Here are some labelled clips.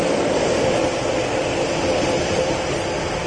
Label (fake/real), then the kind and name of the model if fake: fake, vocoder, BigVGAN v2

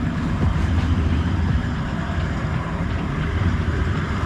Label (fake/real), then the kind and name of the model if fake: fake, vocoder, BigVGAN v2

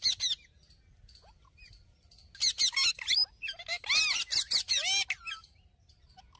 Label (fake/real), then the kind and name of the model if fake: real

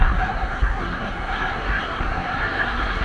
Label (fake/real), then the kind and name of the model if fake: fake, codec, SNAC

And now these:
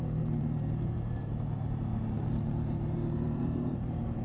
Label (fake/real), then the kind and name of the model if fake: fake, vocoder, BigVGAN v2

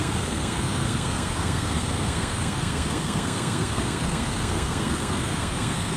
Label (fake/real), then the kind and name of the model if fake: fake, codec, SNAC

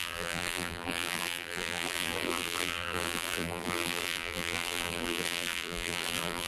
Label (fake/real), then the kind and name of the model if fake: fake, vocoder, BigVGAN v2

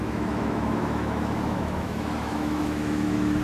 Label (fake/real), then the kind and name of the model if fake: fake, autoencoder, DAC-VAE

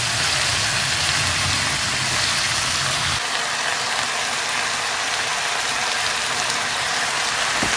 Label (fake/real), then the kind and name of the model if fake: real